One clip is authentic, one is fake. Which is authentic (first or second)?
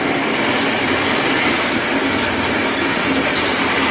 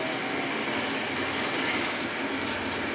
second